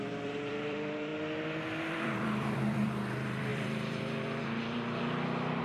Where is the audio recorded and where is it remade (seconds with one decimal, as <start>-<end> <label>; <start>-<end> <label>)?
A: 0.0-1.1 remade; 1.1-1.8 recorded; 1.8-5.6 remade

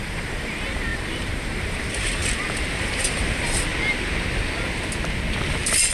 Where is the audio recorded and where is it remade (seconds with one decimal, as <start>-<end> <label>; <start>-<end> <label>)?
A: 0.0-3.7 remade; 3.7-5.5 recorded; 5.5-5.9 remade

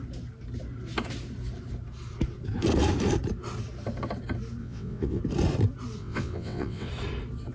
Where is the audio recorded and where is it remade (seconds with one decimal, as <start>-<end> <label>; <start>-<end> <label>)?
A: 0.0-4.6 recorded; 4.6-5.2 remade; 5.2-6.0 recorded; 6.0-6.9 remade; 6.9-7.5 recorded

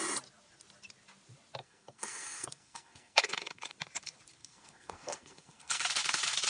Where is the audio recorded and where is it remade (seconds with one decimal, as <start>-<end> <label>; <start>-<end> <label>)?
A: 0.0-1.6 recorded; 1.6-3.7 remade; 3.7-4.4 recorded; 4.4-5.9 remade; 5.9-6.5 recorded